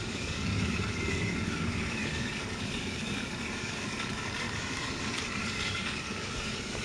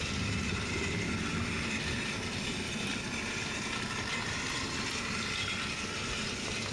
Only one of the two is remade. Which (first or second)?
first